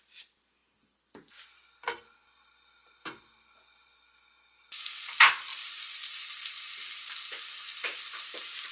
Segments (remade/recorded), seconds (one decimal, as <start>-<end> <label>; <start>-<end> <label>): 0.0-5.5 recorded; 5.5-7.2 remade; 7.2-7.7 recorded; 7.7-8.2 remade; 8.2-8.7 recorded